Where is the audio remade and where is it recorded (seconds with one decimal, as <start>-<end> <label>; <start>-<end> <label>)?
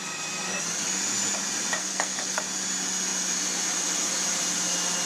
0.0-1.8 recorded; 1.8-2.4 remade; 2.4-5.1 recorded